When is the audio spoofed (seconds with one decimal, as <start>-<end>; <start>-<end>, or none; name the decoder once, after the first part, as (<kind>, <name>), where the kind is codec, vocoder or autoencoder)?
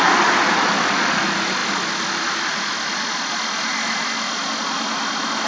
none